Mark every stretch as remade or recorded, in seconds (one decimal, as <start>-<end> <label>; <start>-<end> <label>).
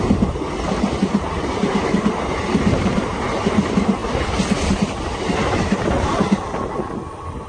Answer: 0.0-7.5 recorded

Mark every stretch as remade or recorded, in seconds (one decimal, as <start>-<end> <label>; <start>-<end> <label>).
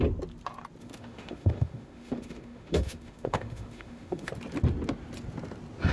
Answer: 0.0-0.8 recorded; 0.8-4.3 remade; 4.3-5.9 recorded